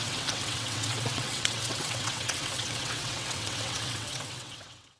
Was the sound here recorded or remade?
remade